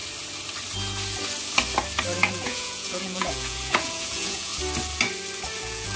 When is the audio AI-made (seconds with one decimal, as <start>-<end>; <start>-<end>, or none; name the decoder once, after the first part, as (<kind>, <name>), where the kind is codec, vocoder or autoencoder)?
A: 2.3-4.5 (vocoder, Vocos); 5.6-6.0